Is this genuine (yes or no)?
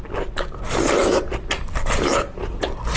yes